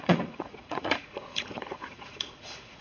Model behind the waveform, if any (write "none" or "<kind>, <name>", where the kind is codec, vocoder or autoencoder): vocoder, Vocos